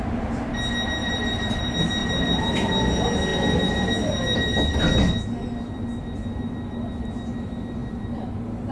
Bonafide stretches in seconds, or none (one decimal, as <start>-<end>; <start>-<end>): 0.0-1.0; 1.6-2.0; 2.5-8.7